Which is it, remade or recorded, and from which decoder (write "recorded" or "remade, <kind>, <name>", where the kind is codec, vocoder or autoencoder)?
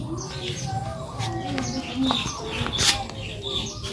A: recorded